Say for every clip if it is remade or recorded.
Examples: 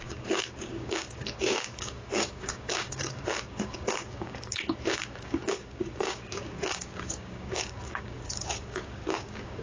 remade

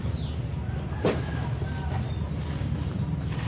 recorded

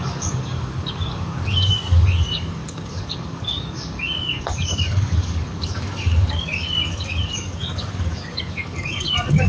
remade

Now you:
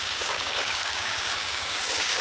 remade